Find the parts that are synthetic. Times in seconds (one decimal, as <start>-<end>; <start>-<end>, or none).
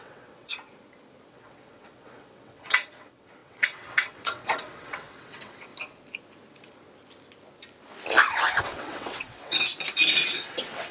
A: 0.0-0.5; 1.3-5.7; 8.6-9.7; 10.3-10.9